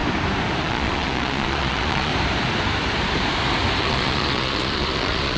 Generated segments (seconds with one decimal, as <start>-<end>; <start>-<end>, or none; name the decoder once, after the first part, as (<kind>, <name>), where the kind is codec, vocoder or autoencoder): 0.6-2.1 (vocoder, Vocos); 3.8-5.4